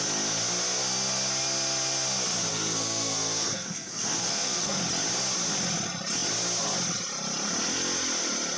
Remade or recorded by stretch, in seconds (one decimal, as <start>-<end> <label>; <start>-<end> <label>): 0.0-2.5 recorded; 2.5-4.8 remade; 4.8-8.6 recorded